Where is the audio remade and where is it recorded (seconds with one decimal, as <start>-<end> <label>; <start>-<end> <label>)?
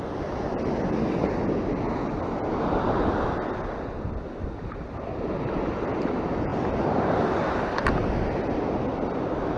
0.0-9.6 recorded